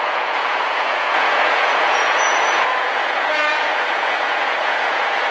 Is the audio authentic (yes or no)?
no